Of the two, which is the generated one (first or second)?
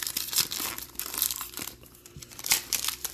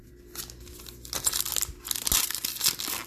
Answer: first